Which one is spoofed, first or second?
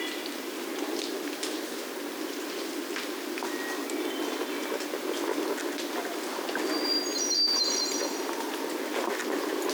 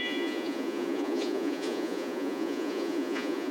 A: second